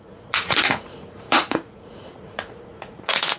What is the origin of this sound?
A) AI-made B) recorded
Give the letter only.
A